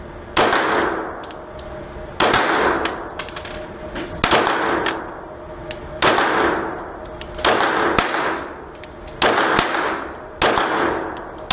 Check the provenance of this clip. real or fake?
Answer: real